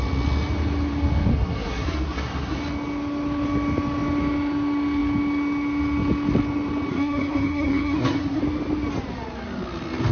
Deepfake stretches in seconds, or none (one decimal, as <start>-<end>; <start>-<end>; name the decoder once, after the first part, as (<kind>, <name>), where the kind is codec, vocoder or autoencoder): 1.3-2.6 (codec, SNAC); 6.9-8.4